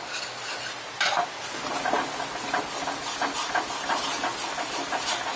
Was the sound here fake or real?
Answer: real